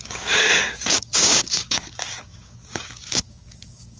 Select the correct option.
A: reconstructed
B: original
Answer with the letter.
A